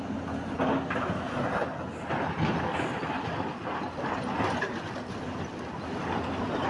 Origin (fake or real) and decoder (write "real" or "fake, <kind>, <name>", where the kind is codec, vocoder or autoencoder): real